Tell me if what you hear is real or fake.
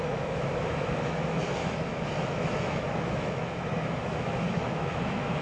fake